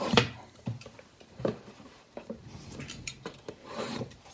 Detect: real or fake fake